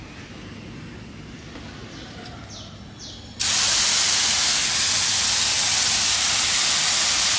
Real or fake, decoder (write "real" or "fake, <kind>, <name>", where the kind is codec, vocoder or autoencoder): real